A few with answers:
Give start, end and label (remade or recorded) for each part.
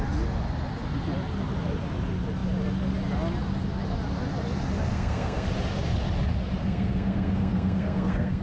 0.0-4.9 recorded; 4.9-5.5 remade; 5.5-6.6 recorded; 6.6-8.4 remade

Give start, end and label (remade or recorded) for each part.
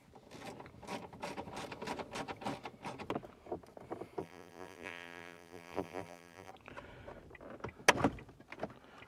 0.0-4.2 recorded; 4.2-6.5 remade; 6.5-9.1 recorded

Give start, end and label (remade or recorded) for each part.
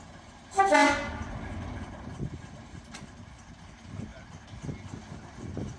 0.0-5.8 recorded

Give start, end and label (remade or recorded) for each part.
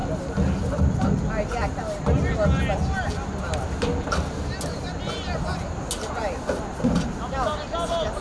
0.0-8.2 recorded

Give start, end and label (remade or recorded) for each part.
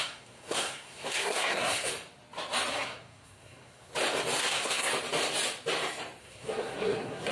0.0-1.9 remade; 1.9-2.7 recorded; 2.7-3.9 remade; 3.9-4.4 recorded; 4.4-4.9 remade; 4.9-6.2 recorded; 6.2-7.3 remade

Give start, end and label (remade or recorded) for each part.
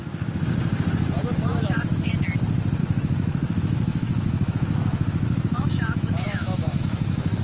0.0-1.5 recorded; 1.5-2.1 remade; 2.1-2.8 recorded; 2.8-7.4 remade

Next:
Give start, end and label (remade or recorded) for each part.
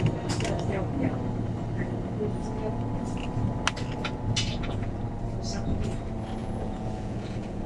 0.0-4.5 recorded; 4.5-5.0 remade; 5.0-6.4 recorded; 6.4-7.7 remade